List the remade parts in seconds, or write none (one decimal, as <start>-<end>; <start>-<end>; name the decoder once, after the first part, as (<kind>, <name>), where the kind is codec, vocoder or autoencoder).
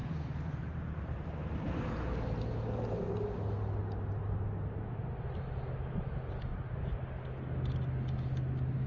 0.0-1.4 (vocoder, BigVGAN v2); 6.5-7.0